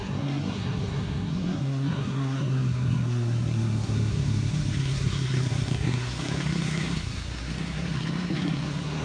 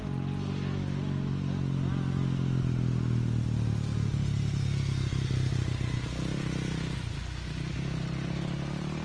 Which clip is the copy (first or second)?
first